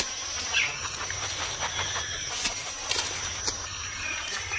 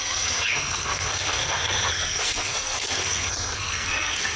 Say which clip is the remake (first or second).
second